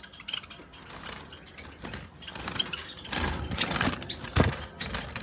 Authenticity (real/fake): real